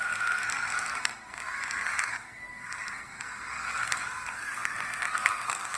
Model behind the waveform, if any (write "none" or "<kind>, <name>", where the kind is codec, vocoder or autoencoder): codec, SNAC